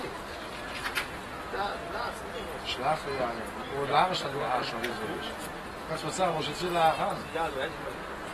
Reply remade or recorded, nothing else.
recorded